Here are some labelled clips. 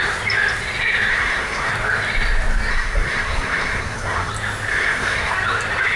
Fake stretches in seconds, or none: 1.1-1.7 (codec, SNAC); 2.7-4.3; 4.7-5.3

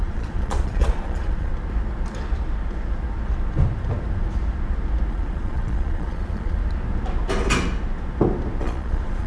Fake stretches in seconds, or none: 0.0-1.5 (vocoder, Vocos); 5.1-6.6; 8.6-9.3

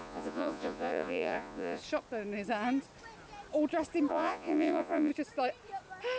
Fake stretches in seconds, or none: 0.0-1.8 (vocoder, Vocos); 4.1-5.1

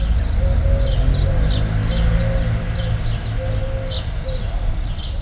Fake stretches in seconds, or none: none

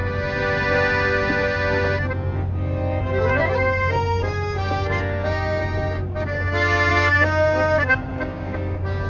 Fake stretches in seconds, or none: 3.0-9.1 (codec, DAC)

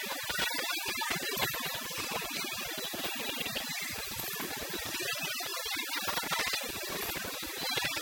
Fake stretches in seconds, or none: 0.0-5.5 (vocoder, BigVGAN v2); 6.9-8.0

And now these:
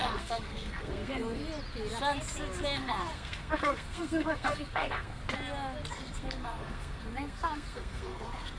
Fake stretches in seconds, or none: 0.0-1.4 (codec, SNAC); 2.6-5.2; 5.9-8.6